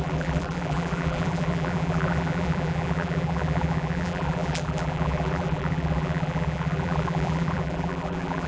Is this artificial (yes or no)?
yes